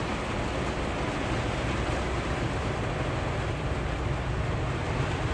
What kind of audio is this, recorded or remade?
recorded